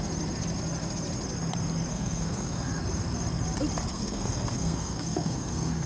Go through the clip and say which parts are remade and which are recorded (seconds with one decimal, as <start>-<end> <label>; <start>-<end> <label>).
0.0-1.9 recorded; 1.9-2.7 remade; 2.7-3.9 recorded; 3.9-5.9 remade